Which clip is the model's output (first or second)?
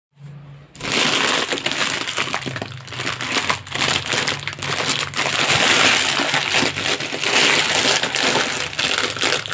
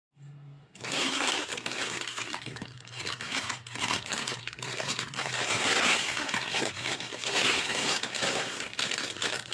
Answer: second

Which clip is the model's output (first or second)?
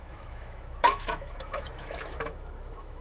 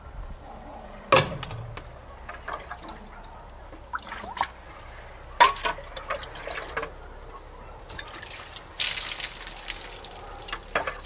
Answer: first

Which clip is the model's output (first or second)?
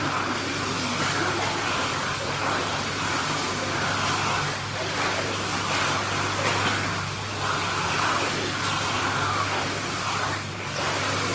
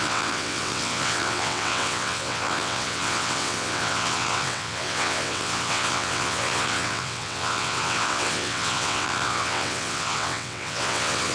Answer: second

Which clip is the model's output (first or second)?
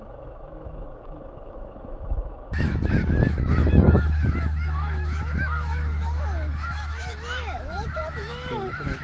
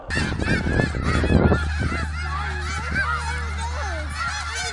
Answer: first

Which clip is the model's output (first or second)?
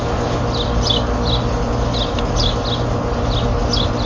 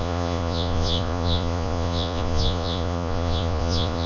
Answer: second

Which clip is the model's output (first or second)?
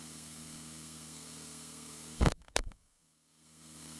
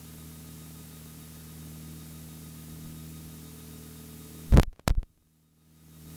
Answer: first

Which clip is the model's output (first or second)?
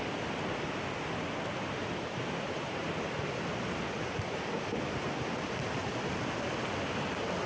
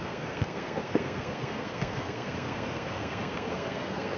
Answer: second